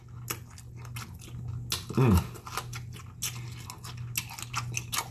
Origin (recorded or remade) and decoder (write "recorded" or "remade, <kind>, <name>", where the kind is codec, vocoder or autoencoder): recorded